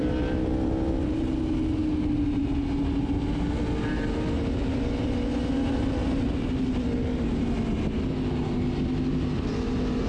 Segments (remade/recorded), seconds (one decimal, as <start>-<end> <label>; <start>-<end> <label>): 0.0-10.1 recorded